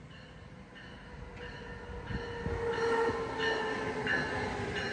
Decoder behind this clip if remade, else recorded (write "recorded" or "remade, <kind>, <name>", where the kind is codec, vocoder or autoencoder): recorded